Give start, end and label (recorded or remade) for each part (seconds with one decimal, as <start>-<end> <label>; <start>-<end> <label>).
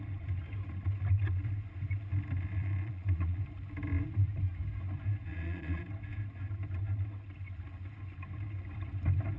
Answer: 0.0-2.5 recorded; 2.5-3.4 remade; 3.4-5.3 recorded; 5.3-5.8 remade; 5.8-9.4 recorded